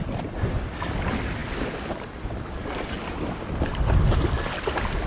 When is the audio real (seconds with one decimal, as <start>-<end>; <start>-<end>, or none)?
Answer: 0.0-5.1